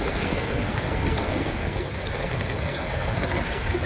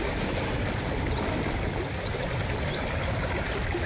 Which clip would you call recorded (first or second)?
second